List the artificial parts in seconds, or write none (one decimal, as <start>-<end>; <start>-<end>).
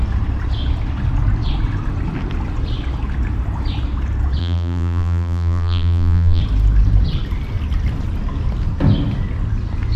4.4-6.4